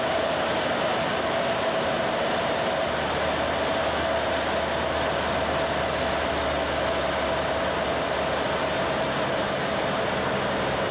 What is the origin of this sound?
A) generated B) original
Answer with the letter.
B